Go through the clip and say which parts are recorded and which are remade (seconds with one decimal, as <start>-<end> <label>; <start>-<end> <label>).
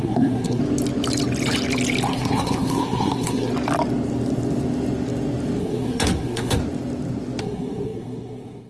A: 0.0-0.6 remade; 0.6-2.1 recorded; 2.1-3.5 remade; 3.5-5.6 recorded; 5.6-6.6 remade; 6.6-7.4 recorded; 7.4-8.7 remade